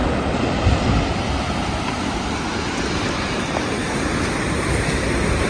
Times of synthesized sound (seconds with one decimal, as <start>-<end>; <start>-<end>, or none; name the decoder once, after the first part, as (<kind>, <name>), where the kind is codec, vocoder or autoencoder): none